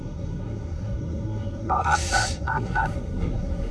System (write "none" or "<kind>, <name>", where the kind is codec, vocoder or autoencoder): codec, SNAC